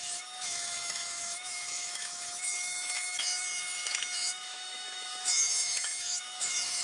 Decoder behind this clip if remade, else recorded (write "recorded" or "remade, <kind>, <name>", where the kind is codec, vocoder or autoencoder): remade, autoencoder, DAC-VAE